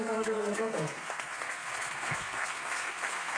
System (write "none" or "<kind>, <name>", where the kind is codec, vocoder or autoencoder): codec, SNAC